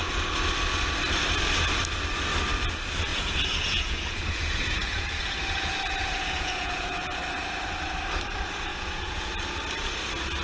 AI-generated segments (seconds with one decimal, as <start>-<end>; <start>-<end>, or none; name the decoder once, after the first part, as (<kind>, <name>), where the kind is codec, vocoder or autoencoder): 3.1-7.2 (vocoder, Vocos); 8.7-9.3